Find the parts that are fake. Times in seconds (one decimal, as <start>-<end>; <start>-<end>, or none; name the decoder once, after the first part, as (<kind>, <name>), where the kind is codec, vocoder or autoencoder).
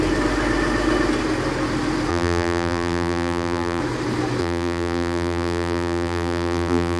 2.1-3.8 (vocoder, BigVGAN v2); 4.4-7.0